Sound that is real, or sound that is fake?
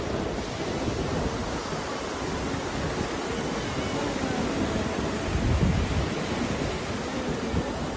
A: real